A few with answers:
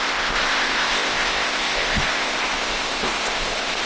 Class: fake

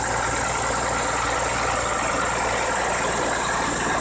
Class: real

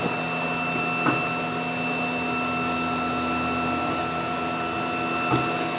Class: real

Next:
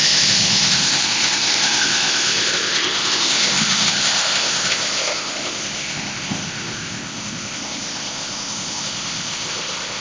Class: fake